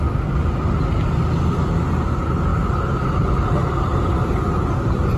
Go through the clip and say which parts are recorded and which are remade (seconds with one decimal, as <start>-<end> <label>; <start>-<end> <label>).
0.0-5.2 recorded